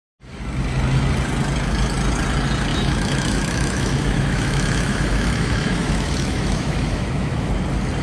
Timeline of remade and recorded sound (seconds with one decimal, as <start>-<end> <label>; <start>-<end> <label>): 0.0-2.7 recorded; 2.7-7.5 remade; 7.5-8.0 recorded